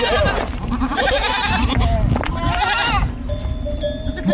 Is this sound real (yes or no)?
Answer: yes